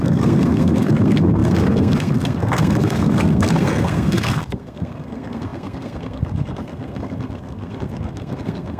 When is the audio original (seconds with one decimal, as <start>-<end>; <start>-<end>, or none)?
none